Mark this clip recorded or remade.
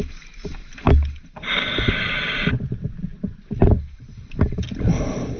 recorded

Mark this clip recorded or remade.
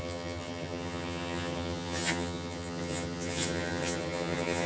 remade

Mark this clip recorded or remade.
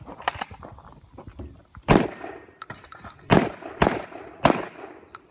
recorded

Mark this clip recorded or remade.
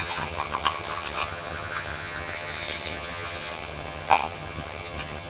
remade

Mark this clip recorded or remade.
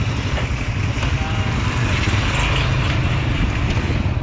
recorded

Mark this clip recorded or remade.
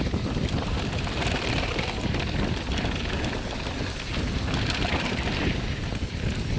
recorded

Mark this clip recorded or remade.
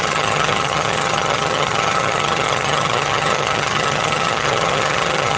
remade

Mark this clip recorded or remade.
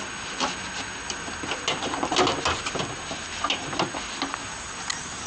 recorded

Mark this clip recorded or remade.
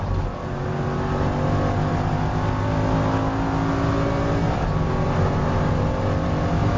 recorded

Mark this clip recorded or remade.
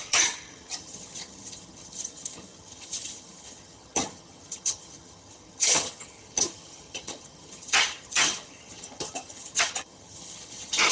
remade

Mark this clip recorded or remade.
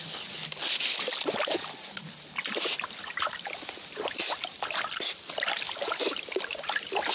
recorded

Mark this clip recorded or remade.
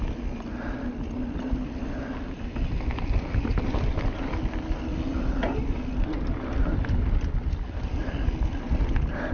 recorded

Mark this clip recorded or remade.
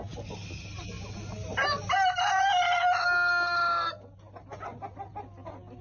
recorded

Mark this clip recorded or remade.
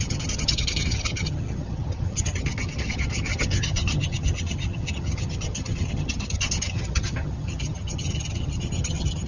remade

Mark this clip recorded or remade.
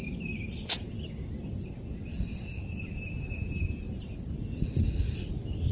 recorded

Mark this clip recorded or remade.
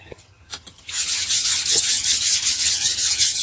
remade